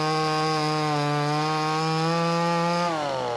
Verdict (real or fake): real